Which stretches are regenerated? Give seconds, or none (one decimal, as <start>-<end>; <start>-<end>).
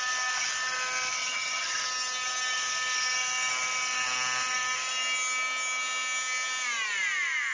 1.2-1.8